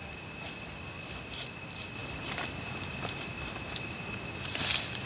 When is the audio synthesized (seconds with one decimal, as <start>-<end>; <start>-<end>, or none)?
none